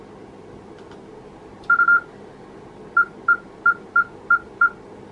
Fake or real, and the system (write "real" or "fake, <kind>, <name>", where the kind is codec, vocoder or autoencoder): real